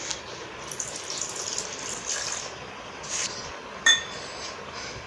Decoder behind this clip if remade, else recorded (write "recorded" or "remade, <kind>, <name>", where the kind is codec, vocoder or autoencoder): recorded